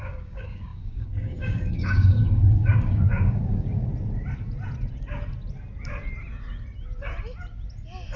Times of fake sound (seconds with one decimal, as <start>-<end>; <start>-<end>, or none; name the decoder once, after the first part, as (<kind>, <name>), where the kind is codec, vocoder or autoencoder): 0.0-3.9 (codec, DAC)